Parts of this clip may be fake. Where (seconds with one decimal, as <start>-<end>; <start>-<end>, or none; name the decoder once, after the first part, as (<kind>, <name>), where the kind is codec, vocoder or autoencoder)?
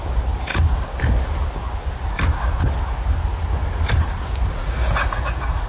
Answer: 4.6-5.7 (vocoder, Vocos)